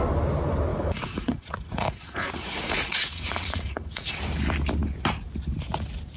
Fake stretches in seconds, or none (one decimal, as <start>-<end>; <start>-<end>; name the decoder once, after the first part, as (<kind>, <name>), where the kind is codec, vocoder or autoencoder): 0.7-4.2 (vocoder, Vocos)